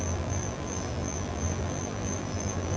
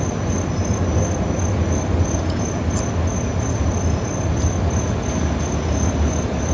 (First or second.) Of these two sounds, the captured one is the second